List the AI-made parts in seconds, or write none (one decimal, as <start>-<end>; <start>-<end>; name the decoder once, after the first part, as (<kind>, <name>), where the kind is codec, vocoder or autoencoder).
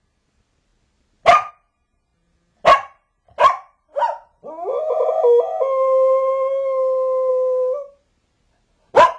none